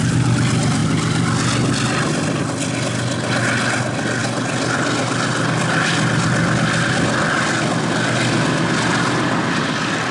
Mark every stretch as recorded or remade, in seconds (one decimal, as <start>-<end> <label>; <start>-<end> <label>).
0.0-10.1 recorded